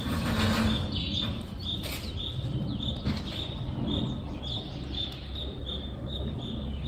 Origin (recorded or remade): recorded